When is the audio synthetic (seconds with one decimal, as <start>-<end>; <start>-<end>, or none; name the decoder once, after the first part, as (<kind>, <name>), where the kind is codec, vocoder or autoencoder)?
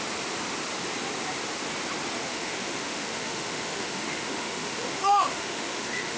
2.3-6.2 (autoencoder, DAC-VAE)